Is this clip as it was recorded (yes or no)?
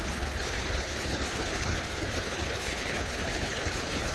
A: no